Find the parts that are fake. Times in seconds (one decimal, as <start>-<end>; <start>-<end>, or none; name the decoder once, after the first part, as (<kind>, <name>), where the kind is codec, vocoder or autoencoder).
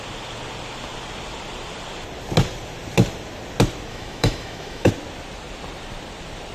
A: 3.9-4.9 (autoencoder, DAC-VAE)